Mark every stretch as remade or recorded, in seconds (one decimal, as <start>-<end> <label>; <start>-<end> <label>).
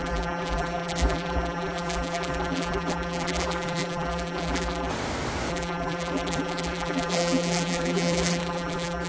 0.0-4.9 remade; 4.9-5.5 recorded; 5.5-9.1 remade